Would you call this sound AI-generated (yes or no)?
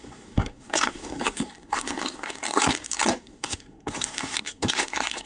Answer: yes